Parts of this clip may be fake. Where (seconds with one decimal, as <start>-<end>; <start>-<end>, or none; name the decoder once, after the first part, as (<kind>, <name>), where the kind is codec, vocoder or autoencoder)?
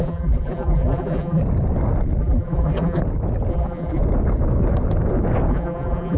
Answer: 0.0-1.4 (vocoder, BigVGAN v2); 2.2-3.0; 3.5-4.0; 5.5-6.2